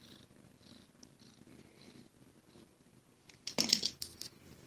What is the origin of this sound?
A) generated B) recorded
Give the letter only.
A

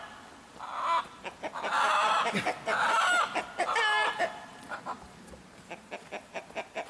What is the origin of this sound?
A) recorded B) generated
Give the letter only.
A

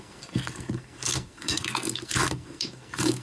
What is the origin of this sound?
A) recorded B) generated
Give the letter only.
B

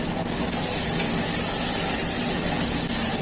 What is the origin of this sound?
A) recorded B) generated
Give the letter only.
A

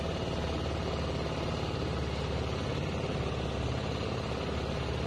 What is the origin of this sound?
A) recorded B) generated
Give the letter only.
A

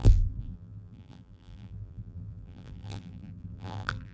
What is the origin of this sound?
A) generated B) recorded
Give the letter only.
A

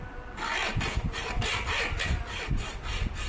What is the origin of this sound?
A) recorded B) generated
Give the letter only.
A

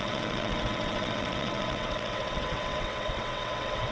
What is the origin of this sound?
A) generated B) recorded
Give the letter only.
A